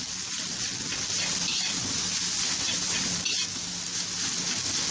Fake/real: real